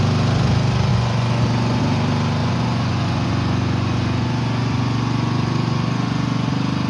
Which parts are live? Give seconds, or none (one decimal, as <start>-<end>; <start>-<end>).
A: 0.0-0.9; 1.8-2.4; 6.5-6.9